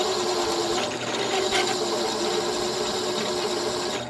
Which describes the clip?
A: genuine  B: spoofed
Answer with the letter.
A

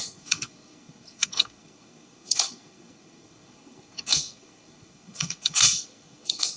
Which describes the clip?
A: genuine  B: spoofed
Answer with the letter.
B